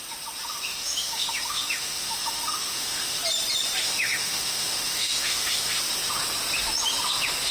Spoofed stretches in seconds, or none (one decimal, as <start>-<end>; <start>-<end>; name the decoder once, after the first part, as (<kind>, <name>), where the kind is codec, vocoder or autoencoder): 0.7-3.2 (autoencoder, DAC-VAE); 3.8-5.8